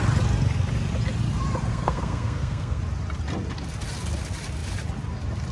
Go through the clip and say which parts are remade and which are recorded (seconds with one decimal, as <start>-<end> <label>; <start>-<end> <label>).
0.0-1.7 recorded; 1.7-2.8 remade; 2.8-5.5 recorded